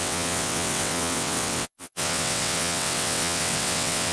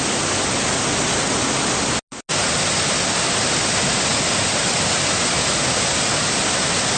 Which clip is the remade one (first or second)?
first